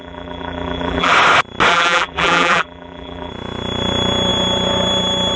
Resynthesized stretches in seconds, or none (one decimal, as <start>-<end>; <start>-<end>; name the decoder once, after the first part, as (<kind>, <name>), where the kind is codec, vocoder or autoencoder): 0.0-1.1 (vocoder, BigVGAN v2); 1.7-3.3